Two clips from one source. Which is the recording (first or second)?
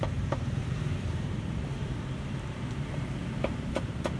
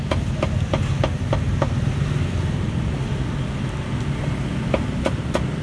second